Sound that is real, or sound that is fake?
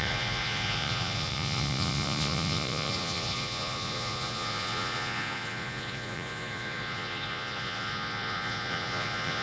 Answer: fake